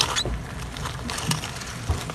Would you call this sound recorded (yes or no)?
yes